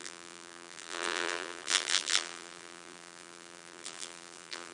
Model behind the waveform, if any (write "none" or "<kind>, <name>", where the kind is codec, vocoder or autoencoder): vocoder, BigVGAN v2